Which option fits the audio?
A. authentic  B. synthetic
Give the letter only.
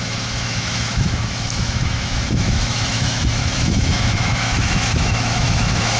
B